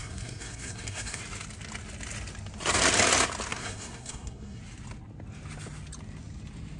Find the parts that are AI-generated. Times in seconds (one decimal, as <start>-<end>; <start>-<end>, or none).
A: 0.0-1.2; 3.5-4.6